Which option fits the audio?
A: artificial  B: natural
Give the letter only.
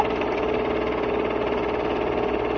B